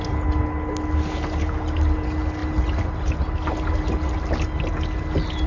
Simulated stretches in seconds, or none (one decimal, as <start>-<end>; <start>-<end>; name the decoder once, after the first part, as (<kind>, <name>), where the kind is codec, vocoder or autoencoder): none